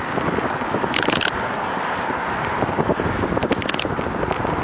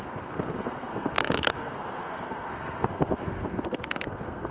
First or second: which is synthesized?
second